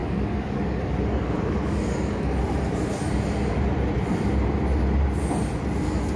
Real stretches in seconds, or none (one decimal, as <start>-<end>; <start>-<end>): 2.4-6.2